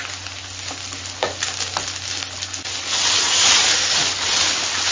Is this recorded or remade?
recorded